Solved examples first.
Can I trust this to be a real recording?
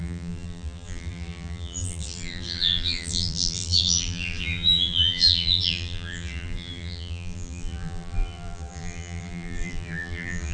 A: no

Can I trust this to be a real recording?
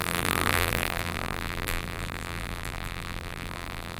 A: no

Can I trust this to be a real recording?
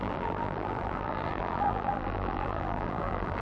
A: no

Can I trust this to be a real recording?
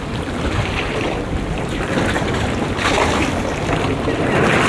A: no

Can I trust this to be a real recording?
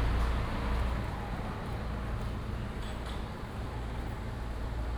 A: yes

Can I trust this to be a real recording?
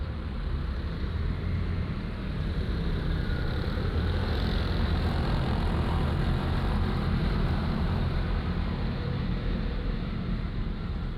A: no